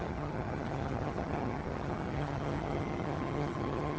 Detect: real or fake fake